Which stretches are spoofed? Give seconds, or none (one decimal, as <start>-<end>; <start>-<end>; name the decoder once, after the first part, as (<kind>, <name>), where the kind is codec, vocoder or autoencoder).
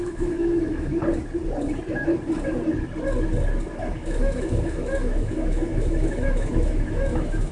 0.0-0.9 (autoencoder, DAC-VAE); 3.9-7.5